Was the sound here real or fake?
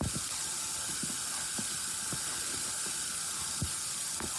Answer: real